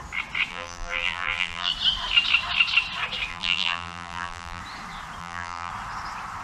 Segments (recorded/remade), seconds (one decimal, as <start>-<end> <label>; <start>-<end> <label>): 0.0-0.5 recorded; 0.5-1.7 remade; 1.7-3.3 recorded; 3.3-4.6 remade; 4.6-5.2 recorded; 5.2-5.7 remade; 5.7-6.4 recorded